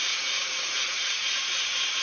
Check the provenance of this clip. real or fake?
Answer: fake